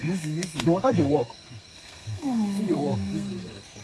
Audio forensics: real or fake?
fake